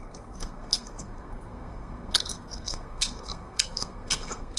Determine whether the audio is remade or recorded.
remade